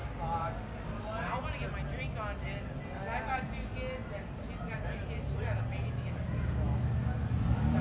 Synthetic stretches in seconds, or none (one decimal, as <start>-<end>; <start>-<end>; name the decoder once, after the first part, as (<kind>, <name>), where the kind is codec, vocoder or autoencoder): none

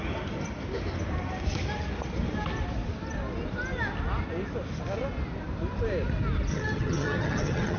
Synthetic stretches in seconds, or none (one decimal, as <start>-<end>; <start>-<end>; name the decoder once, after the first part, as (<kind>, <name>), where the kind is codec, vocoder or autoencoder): 6.5-7.8 (vocoder, HiFi-GAN)